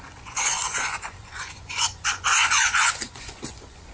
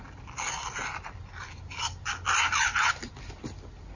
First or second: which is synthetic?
first